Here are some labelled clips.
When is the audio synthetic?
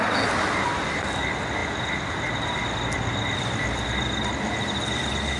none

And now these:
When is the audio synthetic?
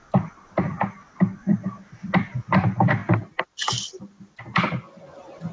0.0-5.5 (vocoder, BigVGAN v2)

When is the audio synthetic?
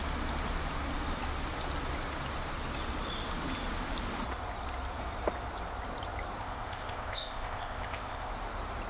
6.4-8.3 (codec, ZipCodec)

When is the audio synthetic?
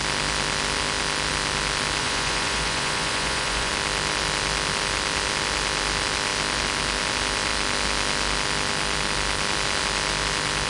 2.0-3.7 (vocoder, Vocos)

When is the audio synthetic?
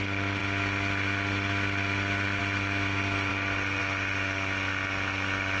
none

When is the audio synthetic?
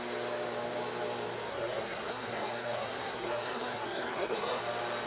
1.5-4.6 (codec, SNAC)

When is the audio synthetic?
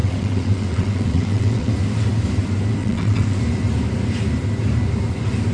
0.0-1.7 (vocoder, WaveNeXt); 2.8-3.4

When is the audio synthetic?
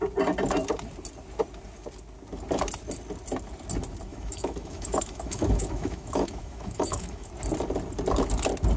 4.1-7.3 (autoencoder, DAC-VAE)